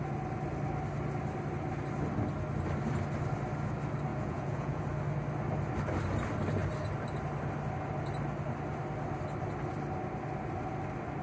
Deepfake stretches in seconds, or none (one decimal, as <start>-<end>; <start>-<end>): 4.1-4.8